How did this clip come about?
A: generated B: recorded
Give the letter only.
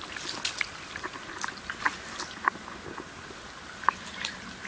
B